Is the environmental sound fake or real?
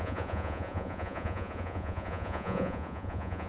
fake